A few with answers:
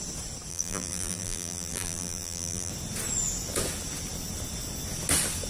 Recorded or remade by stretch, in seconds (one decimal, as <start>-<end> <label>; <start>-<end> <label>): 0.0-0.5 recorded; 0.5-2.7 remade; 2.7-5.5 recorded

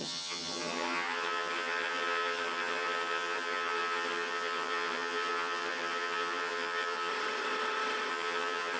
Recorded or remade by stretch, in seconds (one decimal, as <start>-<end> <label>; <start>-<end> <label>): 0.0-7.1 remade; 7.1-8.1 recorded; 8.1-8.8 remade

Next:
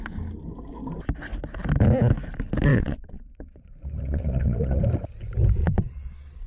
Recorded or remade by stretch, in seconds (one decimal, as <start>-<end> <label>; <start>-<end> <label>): 0.0-2.7 recorded; 2.7-4.8 remade; 4.8-5.6 recorded; 5.6-6.5 remade

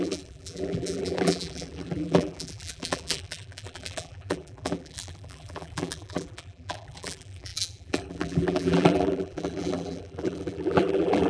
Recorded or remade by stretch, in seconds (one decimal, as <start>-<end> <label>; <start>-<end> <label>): 0.0-11.3 remade

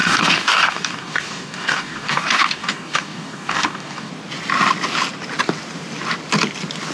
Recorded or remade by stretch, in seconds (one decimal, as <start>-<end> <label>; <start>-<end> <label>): 0.0-4.1 remade; 4.1-6.9 recorded

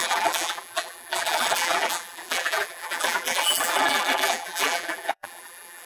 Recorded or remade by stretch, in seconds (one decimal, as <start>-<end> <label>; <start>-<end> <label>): 0.0-5.9 remade